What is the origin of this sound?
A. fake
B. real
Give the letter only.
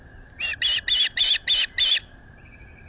B